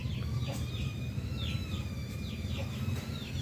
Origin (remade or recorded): remade